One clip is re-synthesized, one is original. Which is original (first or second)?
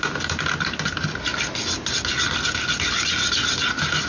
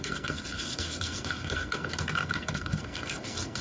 first